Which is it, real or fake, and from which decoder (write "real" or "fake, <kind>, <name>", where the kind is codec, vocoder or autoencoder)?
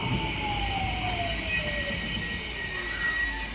real